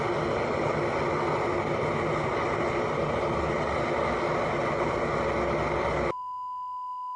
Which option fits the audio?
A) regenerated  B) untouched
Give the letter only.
B